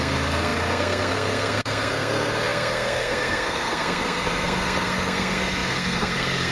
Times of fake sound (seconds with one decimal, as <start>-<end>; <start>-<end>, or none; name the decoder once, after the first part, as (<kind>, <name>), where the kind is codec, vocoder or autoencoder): 0.0-6.5 (codec, SNAC)